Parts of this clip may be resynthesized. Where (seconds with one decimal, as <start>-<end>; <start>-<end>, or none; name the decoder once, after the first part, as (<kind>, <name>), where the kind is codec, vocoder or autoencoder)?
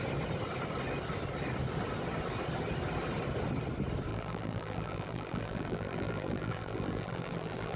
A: 4.1-7.8 (vocoder, BigVGAN v2)